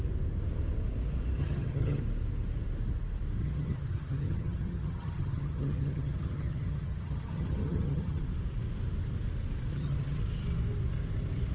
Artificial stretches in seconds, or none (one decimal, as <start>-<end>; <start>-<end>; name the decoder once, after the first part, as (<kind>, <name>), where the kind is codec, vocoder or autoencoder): 1.4-2.0 (vocoder, HiFi-GAN); 3.4-8.2; 9.7-10.2